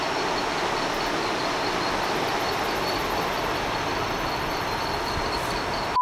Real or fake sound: real